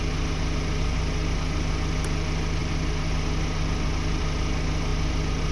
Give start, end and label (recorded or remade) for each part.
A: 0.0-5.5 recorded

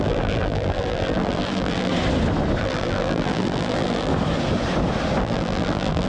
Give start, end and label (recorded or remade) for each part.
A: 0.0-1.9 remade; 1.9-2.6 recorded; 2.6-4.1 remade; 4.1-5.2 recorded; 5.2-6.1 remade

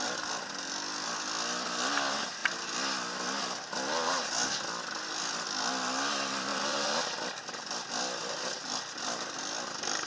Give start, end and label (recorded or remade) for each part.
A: 0.0-6.5 recorded; 6.5-7.0 remade; 7.0-10.1 recorded